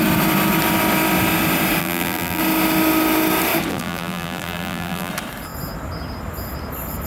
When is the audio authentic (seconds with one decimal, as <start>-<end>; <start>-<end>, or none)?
0.0-1.8; 2.4-3.7; 5.1-7.1